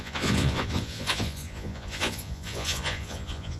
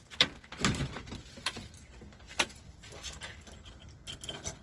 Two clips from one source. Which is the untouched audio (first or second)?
second